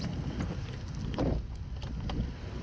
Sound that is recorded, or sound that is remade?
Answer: recorded